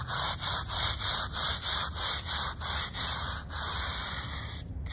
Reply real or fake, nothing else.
fake